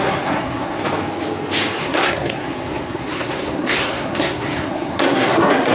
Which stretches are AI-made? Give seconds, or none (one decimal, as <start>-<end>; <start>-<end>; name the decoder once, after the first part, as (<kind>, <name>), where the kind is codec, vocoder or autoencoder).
0.0-0.8 (codec, SNAC); 1.8-5.7